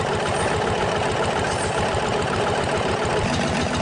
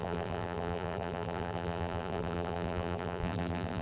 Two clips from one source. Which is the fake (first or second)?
second